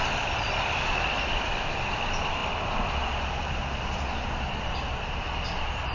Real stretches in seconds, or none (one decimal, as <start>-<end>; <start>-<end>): 0.0-5.9